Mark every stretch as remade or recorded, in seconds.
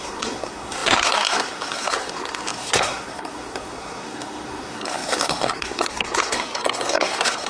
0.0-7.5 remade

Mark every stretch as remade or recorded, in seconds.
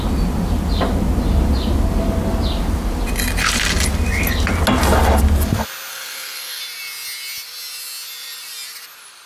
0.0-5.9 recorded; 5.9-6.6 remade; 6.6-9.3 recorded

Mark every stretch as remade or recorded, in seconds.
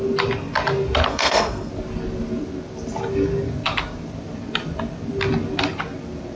0.0-1.1 recorded; 1.1-1.7 remade; 1.7-6.4 recorded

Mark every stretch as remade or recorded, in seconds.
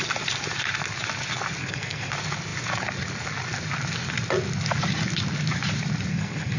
0.0-1.6 recorded; 1.6-2.1 remade; 2.1-6.1 recorded; 6.1-6.6 remade